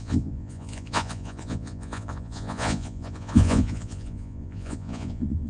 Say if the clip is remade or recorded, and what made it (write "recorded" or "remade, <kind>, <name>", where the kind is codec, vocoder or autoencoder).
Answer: remade, vocoder, Vocos